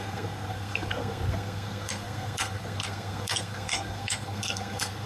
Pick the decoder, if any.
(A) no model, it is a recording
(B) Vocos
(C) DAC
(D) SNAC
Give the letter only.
D